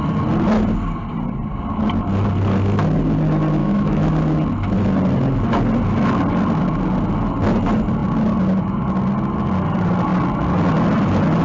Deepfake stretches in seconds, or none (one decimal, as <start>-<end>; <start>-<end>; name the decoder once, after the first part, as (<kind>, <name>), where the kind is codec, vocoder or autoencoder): 3.6-4.1 (autoencoder, DAC-VAE)